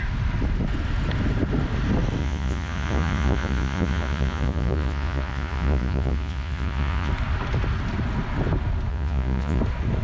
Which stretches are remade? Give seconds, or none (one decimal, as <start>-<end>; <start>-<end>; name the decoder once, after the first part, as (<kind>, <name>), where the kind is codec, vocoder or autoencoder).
2.2-7.1 (vocoder, Vocos); 8.9-9.6